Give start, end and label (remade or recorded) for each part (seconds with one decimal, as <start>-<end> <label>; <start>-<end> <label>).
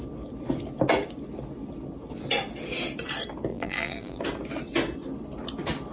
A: 0.0-3.5 recorded; 3.5-4.2 remade; 4.2-5.9 recorded